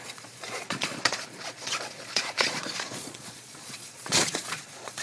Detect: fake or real fake